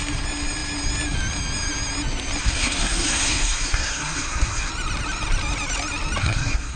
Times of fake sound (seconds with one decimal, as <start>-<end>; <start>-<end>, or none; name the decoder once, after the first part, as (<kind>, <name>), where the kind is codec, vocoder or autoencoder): 2.4-4.7 (codec, SNAC); 6.2-6.8